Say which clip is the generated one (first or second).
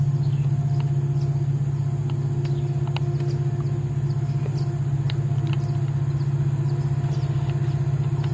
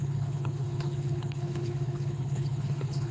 second